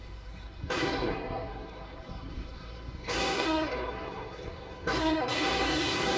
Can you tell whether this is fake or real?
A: fake